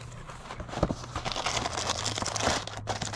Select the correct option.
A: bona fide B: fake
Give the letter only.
A